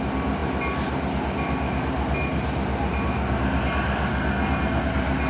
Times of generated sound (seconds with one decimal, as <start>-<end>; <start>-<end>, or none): 4.1-4.8